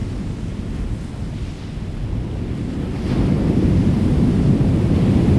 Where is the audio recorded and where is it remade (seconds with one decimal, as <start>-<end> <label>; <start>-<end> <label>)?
0.0-5.4 recorded